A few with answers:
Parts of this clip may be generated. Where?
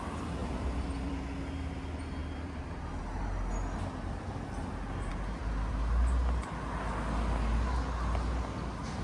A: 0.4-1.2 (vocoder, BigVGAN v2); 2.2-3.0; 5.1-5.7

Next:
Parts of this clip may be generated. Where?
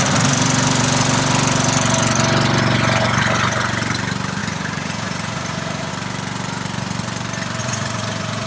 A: 4.4-5.9 (vocoder, Vocos); 7.6-8.5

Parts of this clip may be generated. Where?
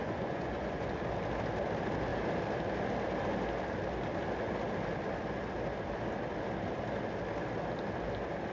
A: 0.0-0.9 (vocoder, Vocos)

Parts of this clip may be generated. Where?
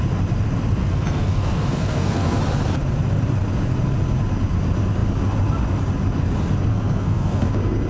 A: 0.8-2.4 (codec, SNAC); 6.7-7.5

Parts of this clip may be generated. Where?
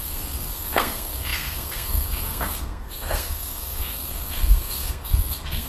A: 0.0-5.7 (codec, SNAC)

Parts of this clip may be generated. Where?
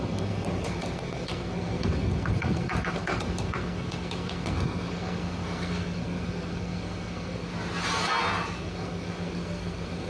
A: 0.0-7.5 (codec, SNAC); 8.6-10.1